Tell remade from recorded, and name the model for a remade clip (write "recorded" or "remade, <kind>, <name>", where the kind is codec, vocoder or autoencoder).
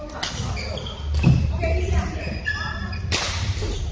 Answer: recorded